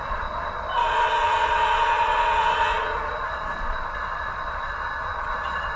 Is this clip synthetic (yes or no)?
yes